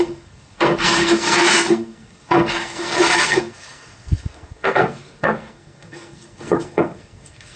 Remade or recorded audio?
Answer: remade